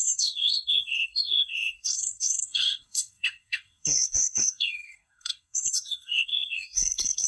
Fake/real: fake